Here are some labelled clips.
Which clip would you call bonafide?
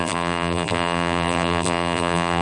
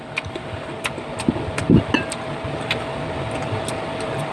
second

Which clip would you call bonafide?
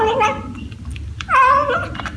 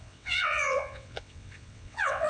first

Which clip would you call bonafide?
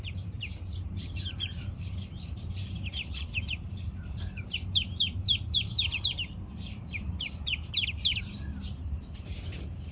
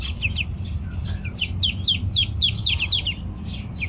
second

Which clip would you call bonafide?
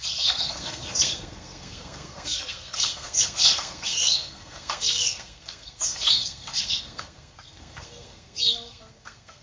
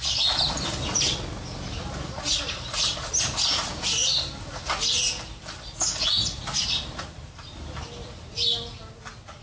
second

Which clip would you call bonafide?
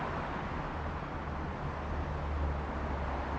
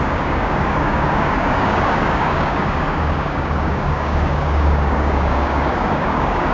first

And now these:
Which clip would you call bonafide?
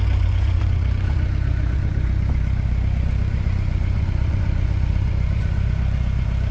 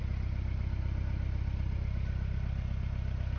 second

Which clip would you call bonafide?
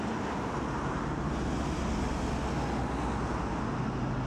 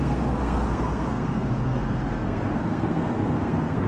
first